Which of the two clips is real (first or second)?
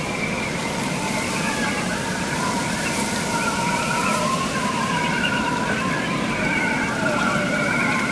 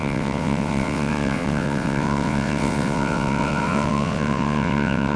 first